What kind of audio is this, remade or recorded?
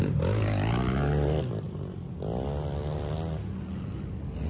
recorded